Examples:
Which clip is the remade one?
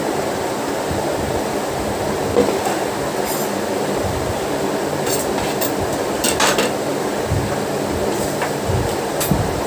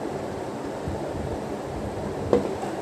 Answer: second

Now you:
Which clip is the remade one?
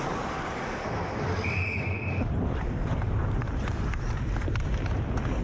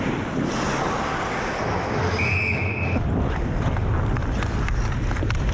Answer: first